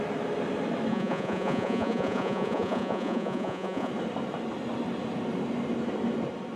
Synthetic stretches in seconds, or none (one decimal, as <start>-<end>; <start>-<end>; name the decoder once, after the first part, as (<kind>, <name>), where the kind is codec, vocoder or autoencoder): 0.9-3.9 (vocoder, Vocos)